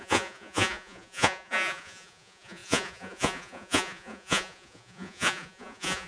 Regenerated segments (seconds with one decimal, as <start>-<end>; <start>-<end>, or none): 0.0-6.1